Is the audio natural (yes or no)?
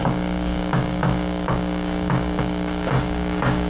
no